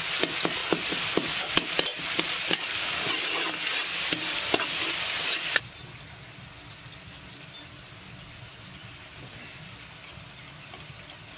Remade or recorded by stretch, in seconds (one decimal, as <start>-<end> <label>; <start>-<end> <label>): 0.0-0.6 recorded; 0.6-3.2 remade; 3.2-3.8 recorded; 3.8-6.4 remade; 6.4-8.8 recorded; 8.8-10.2 remade; 10.2-11.4 recorded